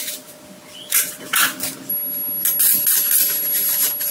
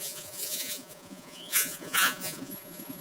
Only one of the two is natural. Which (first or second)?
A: first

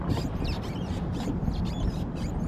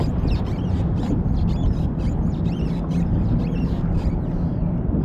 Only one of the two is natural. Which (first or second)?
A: second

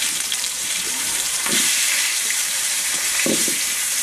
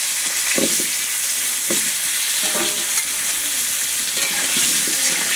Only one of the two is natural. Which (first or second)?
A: second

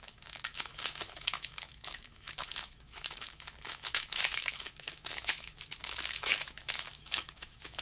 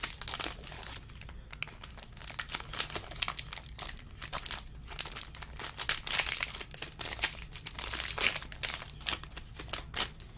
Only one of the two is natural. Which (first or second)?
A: second